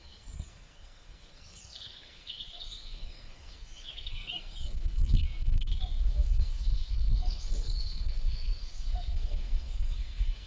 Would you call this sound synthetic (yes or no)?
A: yes